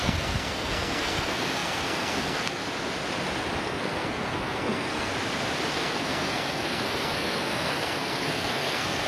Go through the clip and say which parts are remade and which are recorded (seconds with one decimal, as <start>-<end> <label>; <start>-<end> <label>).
0.0-2.6 remade; 2.6-3.6 recorded; 3.6-5.1 remade; 5.1-5.7 recorded; 5.7-9.1 remade